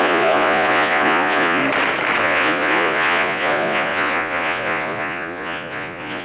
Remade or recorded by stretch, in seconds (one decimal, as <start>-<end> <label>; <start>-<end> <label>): 0.0-1.6 remade; 1.6-2.2 recorded; 2.2-6.2 remade